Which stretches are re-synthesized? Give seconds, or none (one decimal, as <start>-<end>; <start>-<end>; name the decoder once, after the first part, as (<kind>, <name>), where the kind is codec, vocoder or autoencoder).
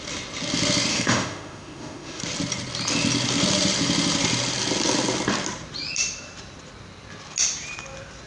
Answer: 0.9-2.2 (autoencoder, DAC-VAE)